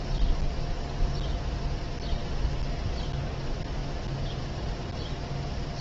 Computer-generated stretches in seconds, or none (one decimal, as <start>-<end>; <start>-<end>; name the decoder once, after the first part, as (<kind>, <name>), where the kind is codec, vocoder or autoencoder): none